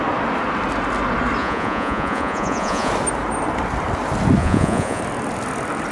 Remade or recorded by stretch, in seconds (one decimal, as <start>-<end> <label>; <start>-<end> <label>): 0.0-1.4 recorded; 1.4-2.9 remade; 2.9-4.4 recorded; 4.4-5.0 remade; 5.0-5.9 recorded